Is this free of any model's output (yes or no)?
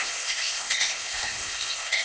no